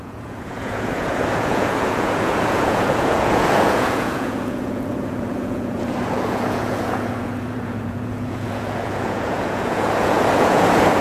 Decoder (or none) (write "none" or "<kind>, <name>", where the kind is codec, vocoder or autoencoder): vocoder, Vocos